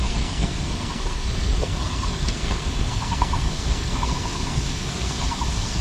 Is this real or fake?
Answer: fake